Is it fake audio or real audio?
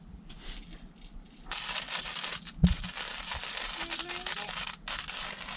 real